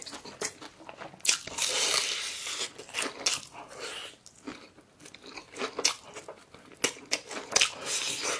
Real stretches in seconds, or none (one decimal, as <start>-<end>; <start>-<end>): 0.0-8.4